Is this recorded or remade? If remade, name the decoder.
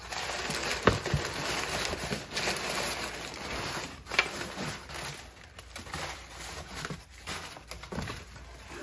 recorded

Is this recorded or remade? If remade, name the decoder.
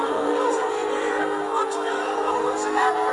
remade, codec, SNAC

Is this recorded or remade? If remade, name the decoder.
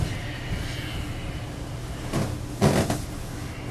recorded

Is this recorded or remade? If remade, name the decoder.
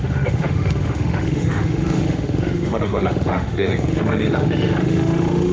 remade, autoencoder, DAC-VAE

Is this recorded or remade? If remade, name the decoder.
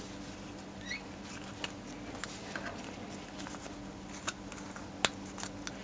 recorded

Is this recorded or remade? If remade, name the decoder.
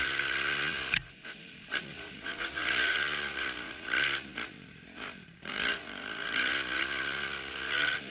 remade, vocoder, Vocos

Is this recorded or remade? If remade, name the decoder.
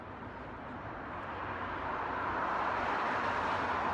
recorded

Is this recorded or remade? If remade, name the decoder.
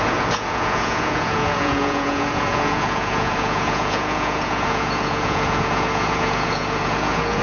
remade, vocoder, Vocos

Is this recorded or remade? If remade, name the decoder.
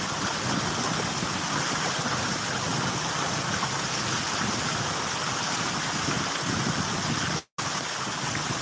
recorded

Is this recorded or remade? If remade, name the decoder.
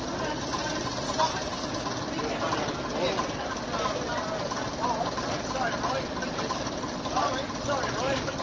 recorded